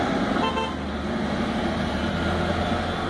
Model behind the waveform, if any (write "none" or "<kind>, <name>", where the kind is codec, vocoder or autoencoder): none